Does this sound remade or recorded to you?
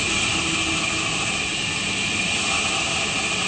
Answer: recorded